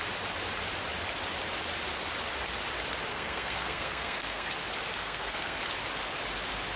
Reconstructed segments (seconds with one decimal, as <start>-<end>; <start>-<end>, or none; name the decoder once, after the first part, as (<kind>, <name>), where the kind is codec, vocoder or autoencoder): 3.1-4.5 (codec, SNAC); 5.0-5.6